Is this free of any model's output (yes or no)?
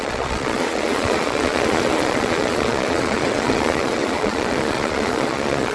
no